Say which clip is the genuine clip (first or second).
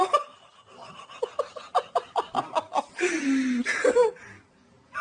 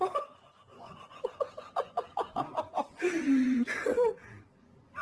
first